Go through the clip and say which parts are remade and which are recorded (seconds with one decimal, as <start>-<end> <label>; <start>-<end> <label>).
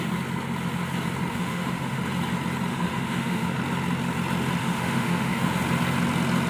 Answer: 0.0-1.3 recorded; 1.3-2.0 remade; 2.0-2.7 recorded; 2.7-3.6 remade; 3.6-4.6 recorded; 4.6-5.5 remade; 5.5-6.5 recorded